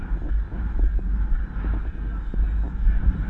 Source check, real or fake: real